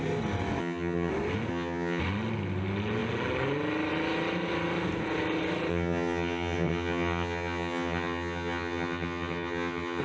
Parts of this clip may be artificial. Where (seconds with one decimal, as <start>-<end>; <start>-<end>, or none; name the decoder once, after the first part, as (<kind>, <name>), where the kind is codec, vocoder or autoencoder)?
0.6-1.1 (vocoder, HiFi-GAN); 1.5-2.0; 5.7-10.0